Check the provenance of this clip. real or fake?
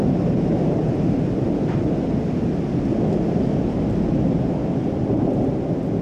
real